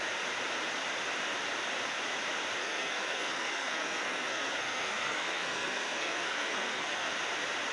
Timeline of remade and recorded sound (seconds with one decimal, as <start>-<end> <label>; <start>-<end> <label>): 0.0-2.6 recorded; 2.6-7.1 remade; 7.1-7.7 recorded